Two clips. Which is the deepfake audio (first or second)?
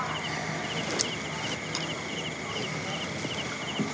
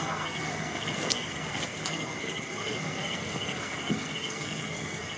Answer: second